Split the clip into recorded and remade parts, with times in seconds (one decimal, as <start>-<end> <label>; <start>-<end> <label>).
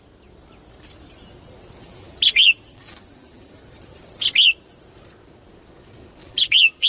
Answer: 0.0-1.8 recorded; 1.8-3.6 remade; 3.6-6.2 recorded; 6.2-6.9 remade